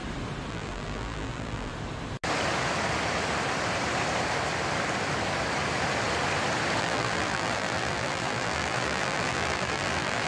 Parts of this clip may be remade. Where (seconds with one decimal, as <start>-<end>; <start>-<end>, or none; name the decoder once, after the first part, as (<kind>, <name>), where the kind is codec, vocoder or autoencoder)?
0.5-1.7 (vocoder, BigVGAN v2); 6.8-10.3